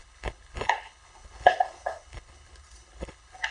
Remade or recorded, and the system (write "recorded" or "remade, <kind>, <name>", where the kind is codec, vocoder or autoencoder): remade, codec, HILCodec